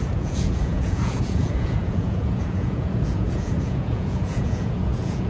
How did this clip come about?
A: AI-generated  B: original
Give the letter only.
A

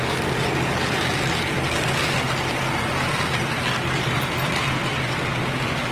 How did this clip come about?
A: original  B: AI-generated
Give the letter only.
B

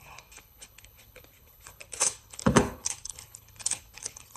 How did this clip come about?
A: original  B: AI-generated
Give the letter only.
B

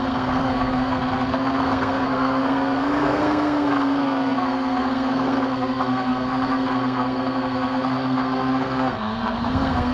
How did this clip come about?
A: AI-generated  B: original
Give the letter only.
A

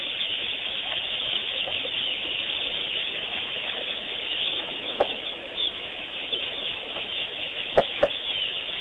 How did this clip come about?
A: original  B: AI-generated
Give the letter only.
B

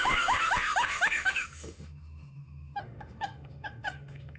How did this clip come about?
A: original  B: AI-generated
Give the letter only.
B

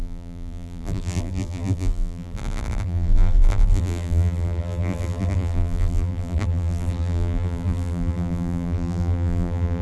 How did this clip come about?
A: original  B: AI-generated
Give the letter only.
B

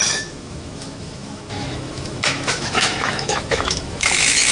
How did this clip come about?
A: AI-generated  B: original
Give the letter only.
A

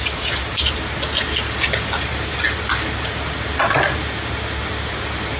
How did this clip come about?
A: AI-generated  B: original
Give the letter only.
B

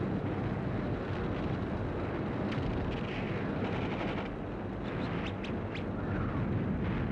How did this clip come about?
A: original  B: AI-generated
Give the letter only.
A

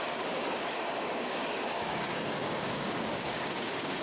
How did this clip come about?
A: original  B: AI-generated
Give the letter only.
B